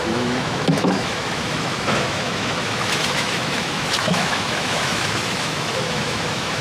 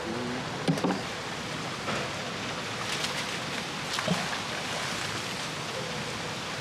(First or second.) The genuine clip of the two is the second